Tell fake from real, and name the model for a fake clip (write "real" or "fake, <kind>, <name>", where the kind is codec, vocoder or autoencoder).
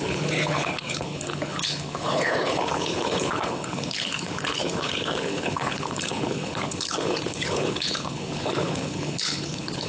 fake, codec, HILCodec